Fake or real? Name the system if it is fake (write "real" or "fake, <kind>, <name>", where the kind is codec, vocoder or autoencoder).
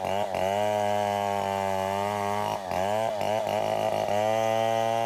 real